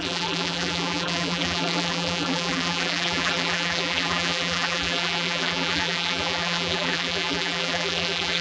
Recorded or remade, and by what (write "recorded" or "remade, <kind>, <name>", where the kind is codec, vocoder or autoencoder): remade, vocoder, BigVGAN v2